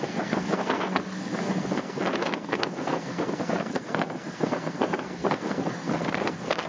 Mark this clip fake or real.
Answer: fake